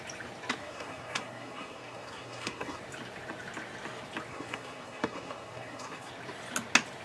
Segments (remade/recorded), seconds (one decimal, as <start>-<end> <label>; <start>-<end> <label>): 0.0-0.6 recorded; 0.6-2.8 remade; 2.8-4.3 recorded; 4.3-6.1 remade; 6.1-7.0 recorded